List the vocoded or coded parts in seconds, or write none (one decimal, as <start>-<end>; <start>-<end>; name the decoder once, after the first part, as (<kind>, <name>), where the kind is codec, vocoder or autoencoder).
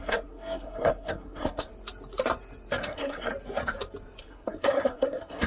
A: 0.0-1.7 (codec, SNAC); 2.8-3.3; 4.2-5.5